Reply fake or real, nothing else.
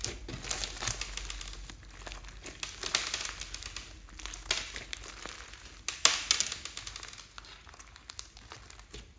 real